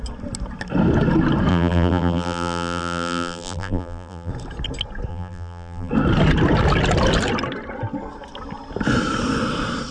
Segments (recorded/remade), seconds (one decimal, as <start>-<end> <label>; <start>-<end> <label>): 0.0-1.5 recorded; 1.5-4.3 remade; 4.3-5.1 recorded; 5.1-5.9 remade; 5.9-9.9 recorded